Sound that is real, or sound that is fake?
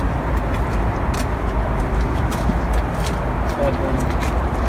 real